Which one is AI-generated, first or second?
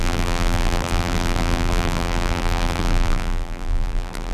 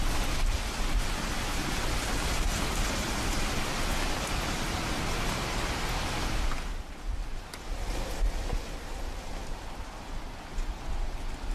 first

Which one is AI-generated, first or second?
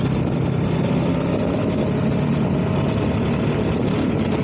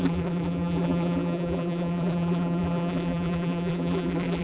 second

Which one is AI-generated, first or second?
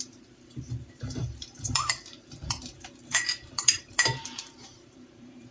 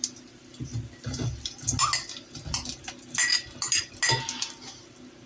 first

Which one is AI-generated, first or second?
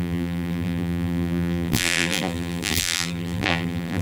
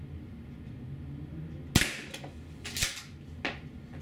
first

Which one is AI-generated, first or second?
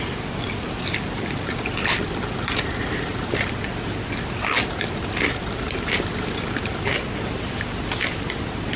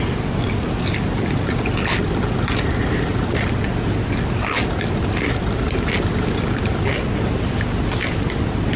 first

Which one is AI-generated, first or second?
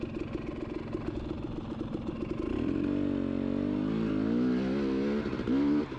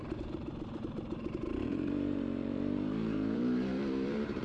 second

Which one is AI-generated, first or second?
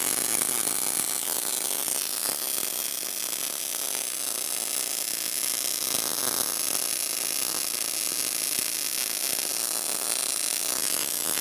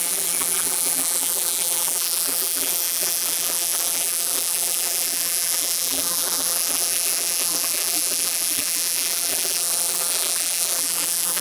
second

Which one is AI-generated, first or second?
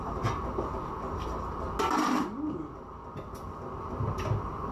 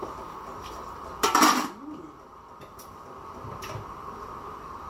second